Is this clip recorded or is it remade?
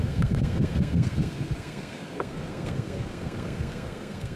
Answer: remade